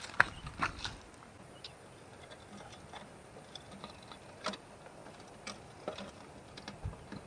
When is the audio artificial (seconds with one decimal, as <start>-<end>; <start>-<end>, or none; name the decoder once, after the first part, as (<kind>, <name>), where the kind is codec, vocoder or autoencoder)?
none